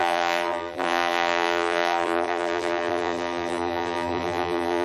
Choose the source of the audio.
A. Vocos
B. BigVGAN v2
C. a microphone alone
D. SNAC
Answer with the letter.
B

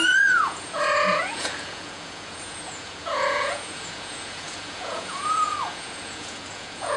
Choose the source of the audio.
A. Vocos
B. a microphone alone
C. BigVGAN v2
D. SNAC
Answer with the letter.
A